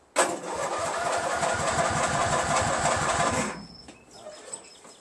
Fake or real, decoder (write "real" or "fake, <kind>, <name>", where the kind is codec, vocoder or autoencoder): real